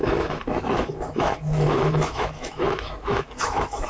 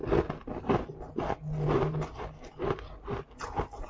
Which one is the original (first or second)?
second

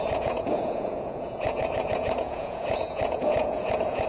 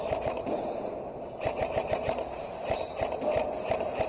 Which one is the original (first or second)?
second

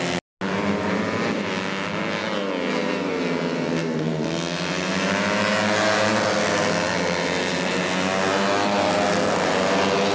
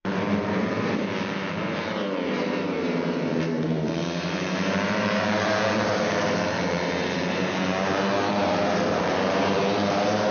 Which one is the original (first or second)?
first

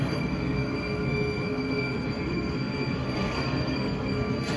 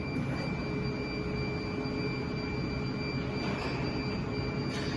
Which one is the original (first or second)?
second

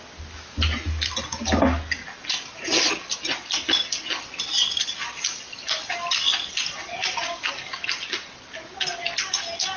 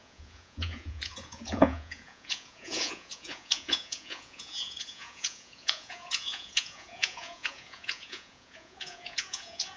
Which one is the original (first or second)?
first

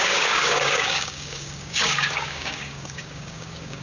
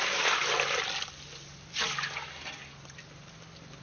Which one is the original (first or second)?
second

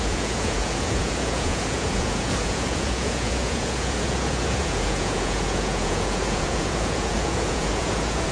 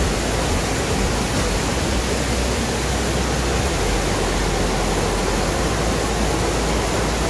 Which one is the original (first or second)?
second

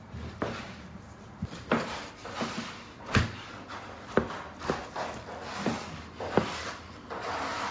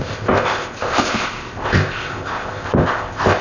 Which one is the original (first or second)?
first